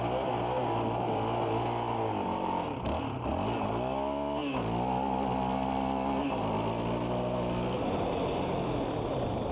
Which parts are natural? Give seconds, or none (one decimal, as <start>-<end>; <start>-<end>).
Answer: 0.0-9.5